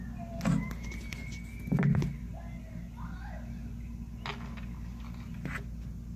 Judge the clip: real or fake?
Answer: real